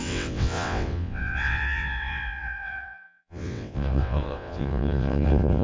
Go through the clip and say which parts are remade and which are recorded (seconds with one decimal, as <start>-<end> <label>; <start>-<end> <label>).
0.0-5.6 remade